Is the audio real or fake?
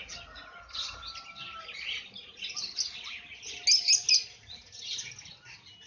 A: real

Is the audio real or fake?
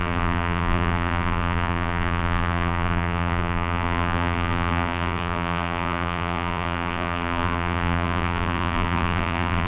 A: fake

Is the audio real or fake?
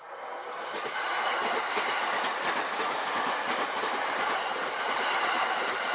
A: real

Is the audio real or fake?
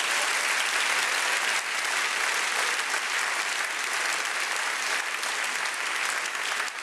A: real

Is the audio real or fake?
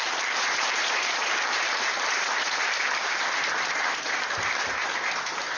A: fake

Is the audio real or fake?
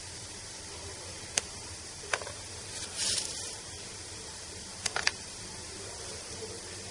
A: fake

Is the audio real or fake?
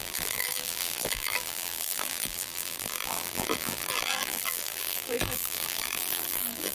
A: fake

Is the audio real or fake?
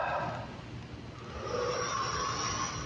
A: fake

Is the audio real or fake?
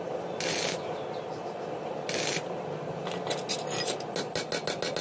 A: real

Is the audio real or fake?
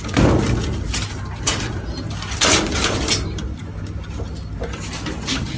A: real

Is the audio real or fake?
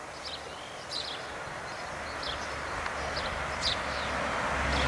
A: real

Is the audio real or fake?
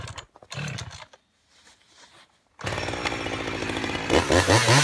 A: real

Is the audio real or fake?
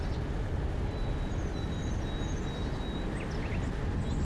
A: real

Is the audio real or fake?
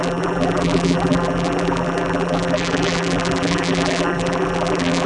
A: fake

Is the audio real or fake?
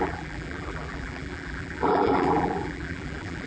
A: fake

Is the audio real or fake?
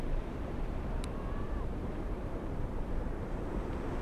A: fake